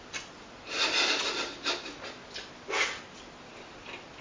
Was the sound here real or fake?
real